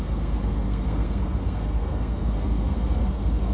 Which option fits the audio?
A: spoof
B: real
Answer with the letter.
A